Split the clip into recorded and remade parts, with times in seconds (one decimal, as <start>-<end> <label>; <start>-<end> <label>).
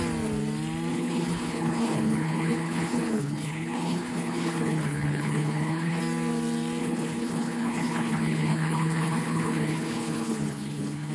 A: 0.0-0.9 recorded; 0.9-6.0 remade; 6.0-6.8 recorded; 6.8-11.1 remade